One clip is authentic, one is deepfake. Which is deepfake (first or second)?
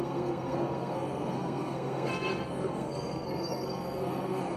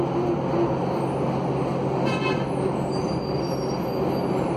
first